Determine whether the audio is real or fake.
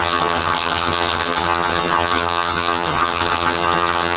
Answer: fake